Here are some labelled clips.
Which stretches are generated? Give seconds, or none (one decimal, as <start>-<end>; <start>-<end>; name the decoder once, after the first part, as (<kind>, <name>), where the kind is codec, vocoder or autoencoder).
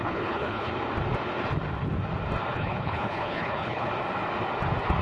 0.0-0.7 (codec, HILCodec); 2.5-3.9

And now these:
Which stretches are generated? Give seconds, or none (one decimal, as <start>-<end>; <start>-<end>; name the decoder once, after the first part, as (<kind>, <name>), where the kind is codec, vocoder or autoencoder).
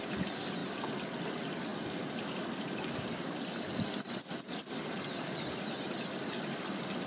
1.7-6.0 (vocoder, BigVGAN v2)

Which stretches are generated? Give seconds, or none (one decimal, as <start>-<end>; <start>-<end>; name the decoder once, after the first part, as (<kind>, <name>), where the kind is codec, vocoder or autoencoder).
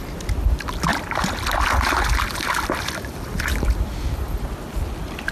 none